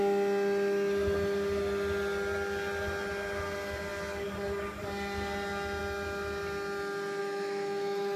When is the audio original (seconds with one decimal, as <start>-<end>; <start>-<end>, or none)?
0.0-7.2